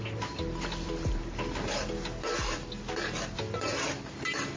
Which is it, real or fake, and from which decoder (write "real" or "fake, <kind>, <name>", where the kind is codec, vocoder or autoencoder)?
real